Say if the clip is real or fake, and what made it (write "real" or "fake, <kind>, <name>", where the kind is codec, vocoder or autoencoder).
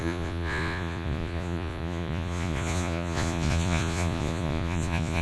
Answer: fake, vocoder, Vocos